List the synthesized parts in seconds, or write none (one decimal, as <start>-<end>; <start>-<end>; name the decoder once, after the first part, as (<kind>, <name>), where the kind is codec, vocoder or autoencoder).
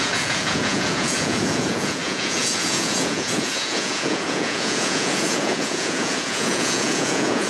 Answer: 0.0-7.5 (vocoder, Vocos)